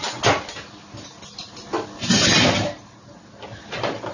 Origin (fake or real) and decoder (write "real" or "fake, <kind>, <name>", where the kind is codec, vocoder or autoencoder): real